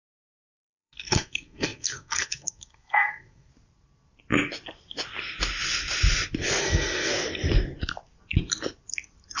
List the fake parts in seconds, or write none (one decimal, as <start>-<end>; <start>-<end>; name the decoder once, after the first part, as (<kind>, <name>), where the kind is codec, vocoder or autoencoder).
0.0-3.5 (codec, SNAC); 6.6-7.1